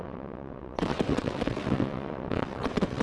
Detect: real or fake fake